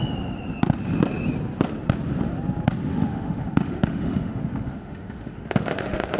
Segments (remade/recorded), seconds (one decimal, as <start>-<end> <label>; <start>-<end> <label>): 0.0-2.9 recorded; 2.9-6.2 remade